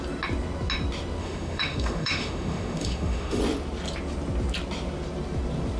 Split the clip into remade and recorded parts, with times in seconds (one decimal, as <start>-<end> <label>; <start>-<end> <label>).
0.0-1.2 recorded; 1.2-3.4 remade; 3.4-5.8 recorded

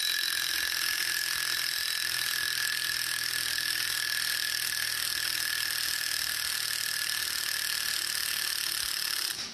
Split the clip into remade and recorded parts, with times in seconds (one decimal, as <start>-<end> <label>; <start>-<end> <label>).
0.0-9.5 recorded